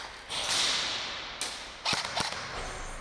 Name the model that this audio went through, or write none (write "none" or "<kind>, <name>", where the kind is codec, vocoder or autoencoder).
none